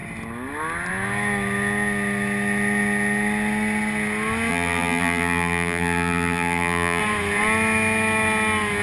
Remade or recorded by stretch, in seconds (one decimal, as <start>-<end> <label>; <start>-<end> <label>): 0.0-4.5 recorded; 4.5-7.0 remade; 7.0-8.8 recorded